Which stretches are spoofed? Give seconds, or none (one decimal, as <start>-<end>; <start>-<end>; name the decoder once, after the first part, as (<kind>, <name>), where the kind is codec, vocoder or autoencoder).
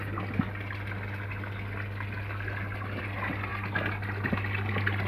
none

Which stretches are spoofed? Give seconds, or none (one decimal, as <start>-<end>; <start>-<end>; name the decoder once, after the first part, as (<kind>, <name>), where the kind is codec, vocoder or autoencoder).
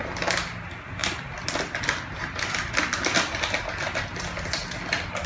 none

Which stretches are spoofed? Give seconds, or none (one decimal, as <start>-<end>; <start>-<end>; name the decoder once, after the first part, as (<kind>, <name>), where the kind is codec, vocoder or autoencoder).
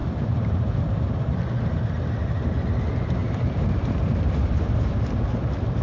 0.0-1.4 (vocoder, BigVGAN v2); 3.2-5.8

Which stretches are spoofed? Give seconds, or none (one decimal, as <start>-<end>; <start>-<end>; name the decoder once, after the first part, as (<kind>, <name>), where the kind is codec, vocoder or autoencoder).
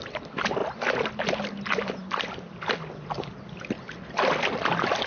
0.6-1.2 (vocoder, BigVGAN v2); 2.0-5.1